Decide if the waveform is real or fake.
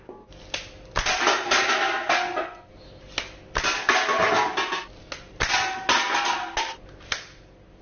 real